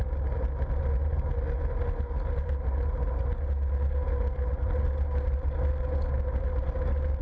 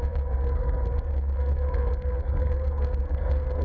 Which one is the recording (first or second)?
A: first